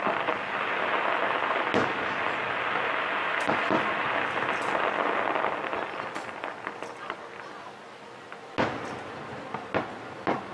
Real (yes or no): yes